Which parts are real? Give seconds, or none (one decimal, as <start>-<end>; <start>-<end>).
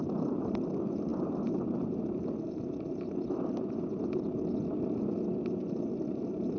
0.0-6.6